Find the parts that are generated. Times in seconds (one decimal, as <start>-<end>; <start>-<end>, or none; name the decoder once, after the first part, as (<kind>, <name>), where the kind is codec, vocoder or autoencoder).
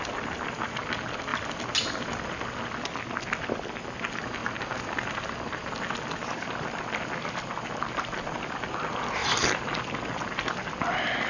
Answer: none